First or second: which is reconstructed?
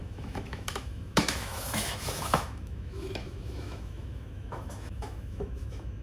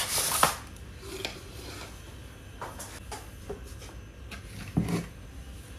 first